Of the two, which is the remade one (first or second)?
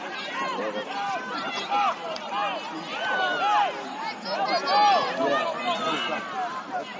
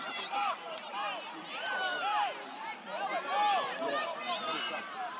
second